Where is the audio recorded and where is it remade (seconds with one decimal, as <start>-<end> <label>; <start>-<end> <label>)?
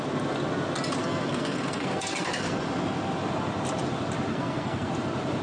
0.0-1.0 recorded; 1.0-2.6 remade; 2.6-4.3 recorded; 4.3-4.9 remade; 4.9-5.4 recorded